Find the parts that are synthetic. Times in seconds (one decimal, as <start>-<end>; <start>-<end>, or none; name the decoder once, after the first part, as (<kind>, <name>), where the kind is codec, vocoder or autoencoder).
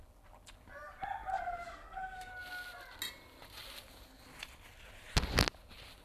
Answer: 1.3-2.3 (codec, SNAC)